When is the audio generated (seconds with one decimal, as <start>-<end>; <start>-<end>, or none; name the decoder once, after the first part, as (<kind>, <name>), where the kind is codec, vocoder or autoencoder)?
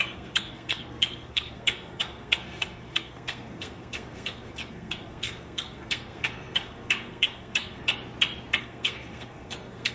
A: 0.0-7.9 (codec, SNAC); 8.6-9.9